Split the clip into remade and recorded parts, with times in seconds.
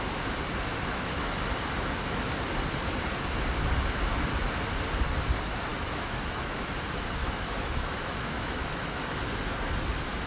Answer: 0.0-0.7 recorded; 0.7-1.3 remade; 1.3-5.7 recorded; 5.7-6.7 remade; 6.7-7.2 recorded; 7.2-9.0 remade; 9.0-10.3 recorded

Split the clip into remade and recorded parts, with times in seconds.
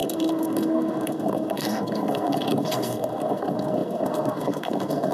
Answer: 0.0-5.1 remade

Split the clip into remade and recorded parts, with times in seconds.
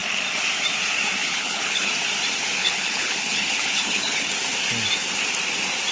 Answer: 0.0-1.2 recorded; 1.2-1.9 remade; 1.9-2.6 recorded; 2.6-4.3 remade; 4.3-5.9 recorded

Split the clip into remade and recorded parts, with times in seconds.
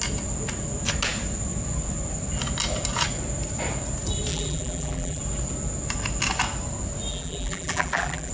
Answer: 0.0-4.3 recorded; 4.3-5.2 remade; 5.2-7.1 recorded; 7.1-8.3 remade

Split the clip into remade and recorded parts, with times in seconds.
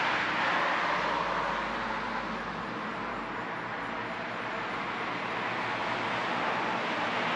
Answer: 0.0-7.4 recorded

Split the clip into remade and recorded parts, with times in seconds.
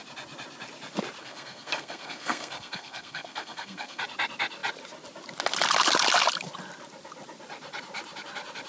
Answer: 0.0-1.2 recorded; 1.2-4.0 remade; 4.0-8.7 recorded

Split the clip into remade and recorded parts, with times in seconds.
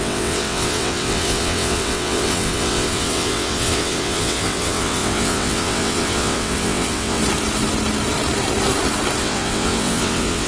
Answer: 0.0-7.2 remade; 7.2-9.2 recorded; 9.2-10.5 remade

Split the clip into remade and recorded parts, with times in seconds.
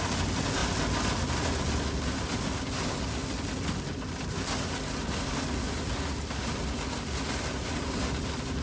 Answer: 0.0-8.6 recorded